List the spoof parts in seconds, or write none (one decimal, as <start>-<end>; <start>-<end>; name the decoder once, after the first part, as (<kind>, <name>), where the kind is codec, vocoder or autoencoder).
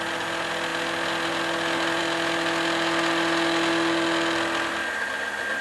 none